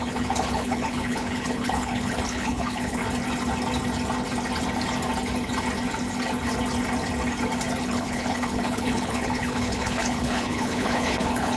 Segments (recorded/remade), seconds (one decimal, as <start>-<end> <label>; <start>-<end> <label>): 0.0-3.0 remade; 3.0-7.8 recorded; 7.8-11.6 remade